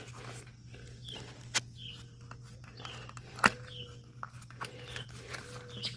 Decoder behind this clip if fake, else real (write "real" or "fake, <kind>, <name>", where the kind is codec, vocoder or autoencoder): real